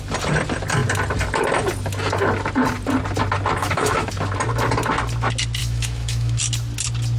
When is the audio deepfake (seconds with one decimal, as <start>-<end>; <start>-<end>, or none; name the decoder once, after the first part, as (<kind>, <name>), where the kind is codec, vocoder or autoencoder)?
3.6-4.1 (autoencoder, DAC-VAE); 5.6-6.4